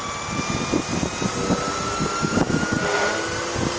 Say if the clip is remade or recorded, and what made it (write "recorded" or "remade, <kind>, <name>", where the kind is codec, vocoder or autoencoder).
recorded